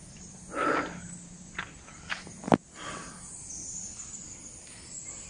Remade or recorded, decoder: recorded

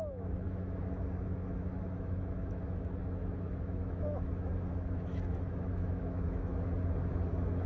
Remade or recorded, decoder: remade, autoencoder, DAC-VAE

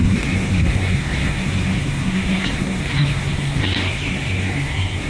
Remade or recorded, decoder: remade, codec, SNAC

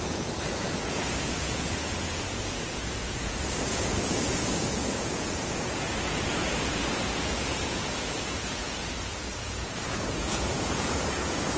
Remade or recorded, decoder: remade, vocoder, Vocos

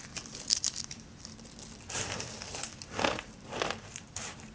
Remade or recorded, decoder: remade, vocoder, BigVGAN v2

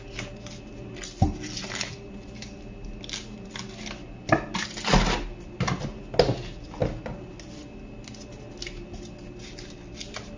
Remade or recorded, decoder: recorded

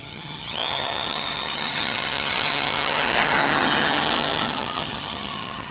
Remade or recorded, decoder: remade, vocoder, HiFi-GAN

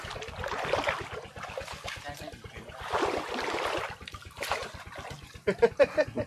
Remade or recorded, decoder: recorded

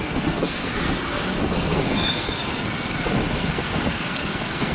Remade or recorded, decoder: remade, codec, SNAC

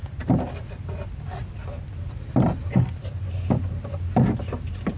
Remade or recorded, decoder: recorded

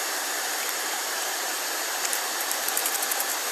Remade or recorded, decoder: remade, vocoder, BigVGAN v2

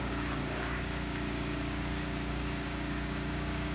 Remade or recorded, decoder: remade, codec, DAC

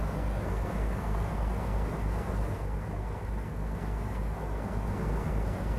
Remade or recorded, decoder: remade, codec, SNAC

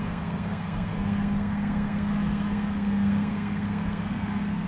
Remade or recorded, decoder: remade, codec, SNAC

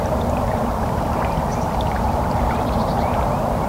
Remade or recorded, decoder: remade, vocoder, BigVGAN v2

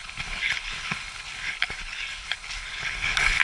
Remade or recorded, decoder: remade, codec, HILCodec